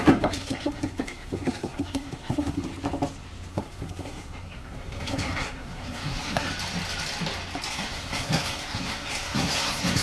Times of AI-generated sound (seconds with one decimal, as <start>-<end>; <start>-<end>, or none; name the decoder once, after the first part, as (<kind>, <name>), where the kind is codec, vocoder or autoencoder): 0.0-2.7 (codec, SNAC); 3.5-6.5; 7.7-10.0

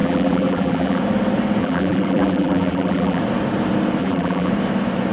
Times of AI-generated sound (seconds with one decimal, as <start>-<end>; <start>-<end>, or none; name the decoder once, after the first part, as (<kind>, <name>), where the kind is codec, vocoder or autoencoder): 0.0-1.0 (vocoder, BigVGAN v2); 1.6-3.2; 4.0-4.5

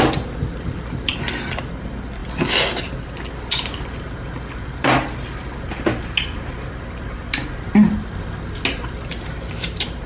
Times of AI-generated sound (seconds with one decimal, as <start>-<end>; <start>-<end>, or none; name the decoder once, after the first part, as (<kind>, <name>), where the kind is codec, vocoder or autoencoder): none

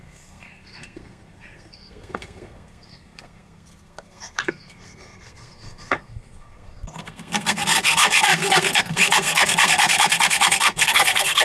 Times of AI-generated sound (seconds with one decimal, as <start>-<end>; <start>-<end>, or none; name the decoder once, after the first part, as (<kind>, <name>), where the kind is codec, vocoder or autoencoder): 0.0-11.4 (codec, SNAC)

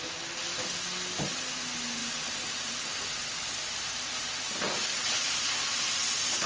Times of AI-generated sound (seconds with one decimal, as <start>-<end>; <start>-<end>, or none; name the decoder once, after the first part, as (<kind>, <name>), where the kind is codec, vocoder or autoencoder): 2.0-5.5 (vocoder, BigVGAN v2)

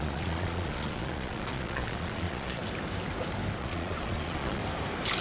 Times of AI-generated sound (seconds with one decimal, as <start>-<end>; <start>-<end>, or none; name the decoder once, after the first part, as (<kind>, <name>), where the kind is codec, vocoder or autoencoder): 0.0-2.6 (vocoder, Vocos); 3.6-4.6